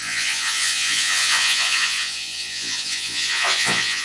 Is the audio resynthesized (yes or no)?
yes